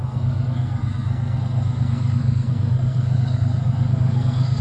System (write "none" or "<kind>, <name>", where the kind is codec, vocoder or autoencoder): codec, SNAC